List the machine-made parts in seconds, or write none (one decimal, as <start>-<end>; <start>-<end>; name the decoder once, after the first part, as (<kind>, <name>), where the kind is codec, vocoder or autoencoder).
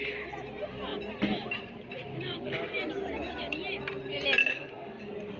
2.1-2.8 (codec, DAC); 4.4-5.0